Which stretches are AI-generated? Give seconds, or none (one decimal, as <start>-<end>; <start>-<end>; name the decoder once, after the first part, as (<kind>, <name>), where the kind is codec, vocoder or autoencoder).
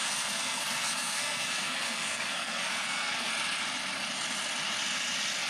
0.0-3.3 (codec, SNAC)